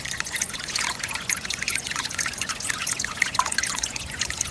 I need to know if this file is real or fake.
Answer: fake